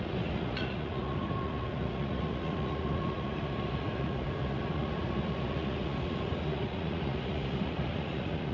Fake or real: fake